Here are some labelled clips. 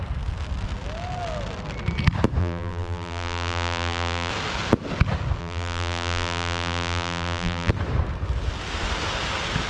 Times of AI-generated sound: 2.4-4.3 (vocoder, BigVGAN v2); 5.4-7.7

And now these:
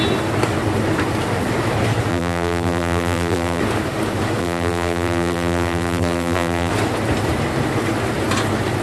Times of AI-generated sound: 2.1-3.6 (vocoder, BigVGAN v2); 4.4-6.7